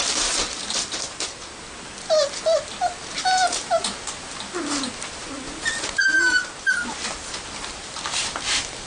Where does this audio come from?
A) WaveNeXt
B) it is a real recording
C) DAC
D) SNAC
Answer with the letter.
B